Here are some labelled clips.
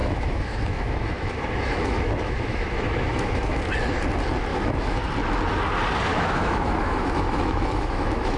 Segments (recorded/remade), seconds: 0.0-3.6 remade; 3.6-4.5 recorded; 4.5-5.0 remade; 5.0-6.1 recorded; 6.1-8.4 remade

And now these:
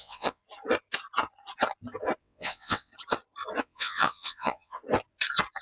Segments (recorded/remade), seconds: 0.0-0.4 remade; 0.4-2.2 recorded; 2.2-2.9 remade; 2.9-3.6 recorded; 3.6-4.8 remade; 4.8-5.6 recorded

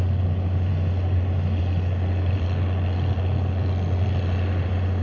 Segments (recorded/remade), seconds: 0.0-5.0 recorded

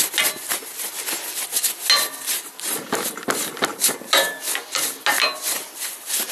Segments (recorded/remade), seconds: 0.0-6.3 recorded

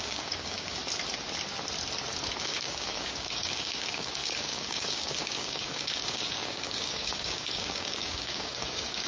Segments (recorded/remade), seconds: 0.0-0.8 remade; 0.8-2.4 recorded; 2.4-9.1 remade

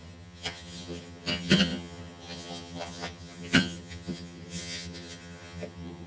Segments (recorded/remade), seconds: 0.0-6.1 remade